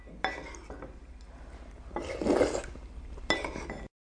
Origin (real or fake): real